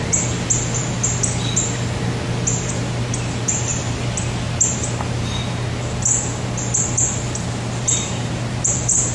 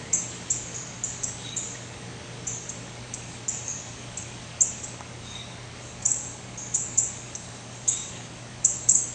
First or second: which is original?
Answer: first